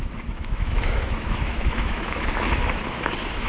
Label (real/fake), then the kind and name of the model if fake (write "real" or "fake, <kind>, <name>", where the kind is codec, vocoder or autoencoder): fake, autoencoder, DAC-VAE